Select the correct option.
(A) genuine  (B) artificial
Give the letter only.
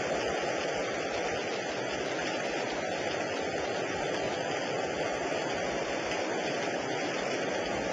A